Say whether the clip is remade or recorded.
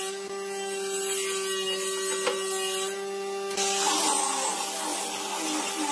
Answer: recorded